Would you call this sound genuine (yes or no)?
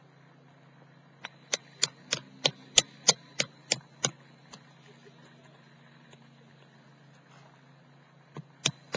yes